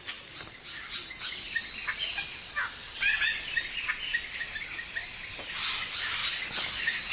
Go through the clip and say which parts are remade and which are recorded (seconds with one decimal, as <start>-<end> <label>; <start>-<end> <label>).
0.0-7.1 recorded